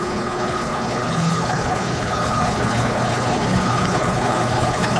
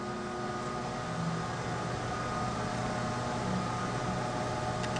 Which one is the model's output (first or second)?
first